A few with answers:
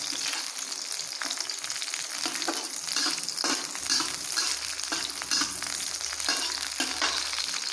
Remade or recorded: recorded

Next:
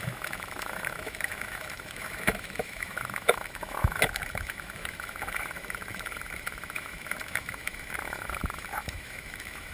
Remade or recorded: remade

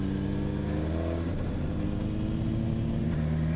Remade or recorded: recorded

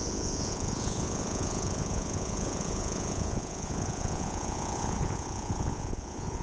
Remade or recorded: remade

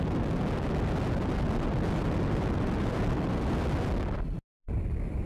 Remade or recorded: recorded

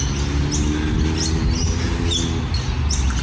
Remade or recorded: recorded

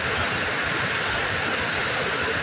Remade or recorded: recorded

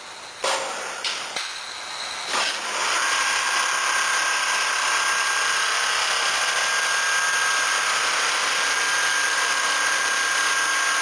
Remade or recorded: recorded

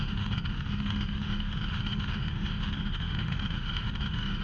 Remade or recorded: remade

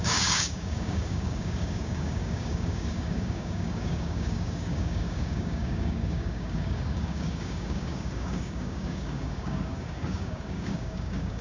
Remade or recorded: remade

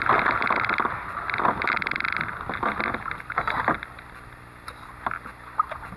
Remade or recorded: recorded